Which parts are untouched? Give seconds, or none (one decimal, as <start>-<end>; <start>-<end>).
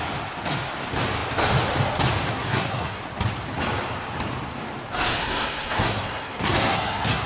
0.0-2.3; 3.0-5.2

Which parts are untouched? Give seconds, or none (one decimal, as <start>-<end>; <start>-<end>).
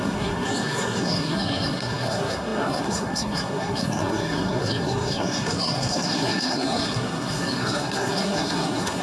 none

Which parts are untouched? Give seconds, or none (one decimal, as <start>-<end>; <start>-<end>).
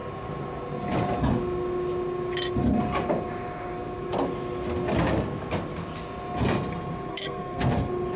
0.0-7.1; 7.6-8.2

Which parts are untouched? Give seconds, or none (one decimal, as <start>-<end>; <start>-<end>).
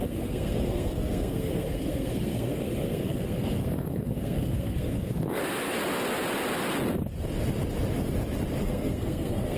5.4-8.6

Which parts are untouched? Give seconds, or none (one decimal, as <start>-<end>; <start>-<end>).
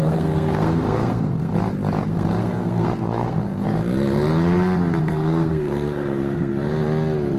1.5-2.0; 3.8-5.0; 6.5-7.4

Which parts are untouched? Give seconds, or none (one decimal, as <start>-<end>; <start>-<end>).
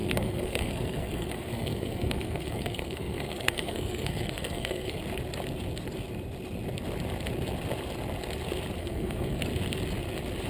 5.0-8.8; 9.4-10.5